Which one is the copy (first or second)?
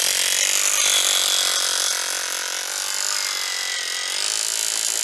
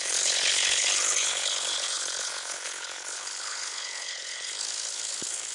second